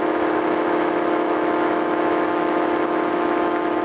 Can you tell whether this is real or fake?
fake